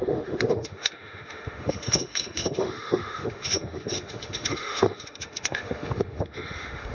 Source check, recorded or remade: remade